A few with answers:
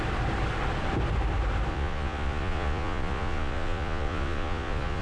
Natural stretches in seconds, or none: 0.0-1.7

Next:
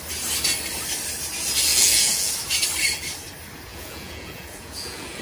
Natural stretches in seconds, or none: 0.0-1.7; 2.3-3.7